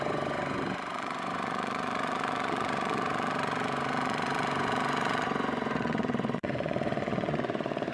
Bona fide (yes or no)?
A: no